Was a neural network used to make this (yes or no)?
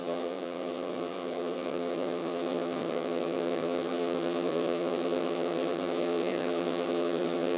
yes